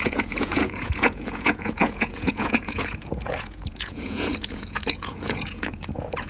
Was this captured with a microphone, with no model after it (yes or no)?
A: no